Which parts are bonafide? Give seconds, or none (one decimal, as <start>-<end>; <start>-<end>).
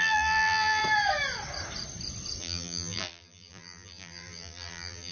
0.8-2.4